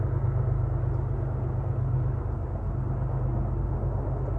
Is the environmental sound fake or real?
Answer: real